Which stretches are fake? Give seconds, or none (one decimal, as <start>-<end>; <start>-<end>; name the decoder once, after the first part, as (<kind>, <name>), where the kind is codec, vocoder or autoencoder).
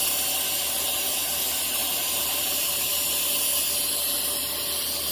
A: 1.8-2.9 (vocoder, BigVGAN v2)